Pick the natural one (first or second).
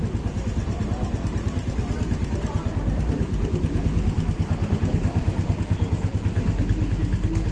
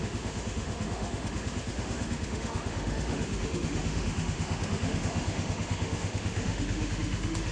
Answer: first